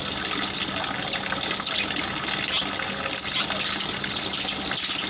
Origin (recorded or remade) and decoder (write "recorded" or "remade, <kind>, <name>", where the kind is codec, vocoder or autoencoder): recorded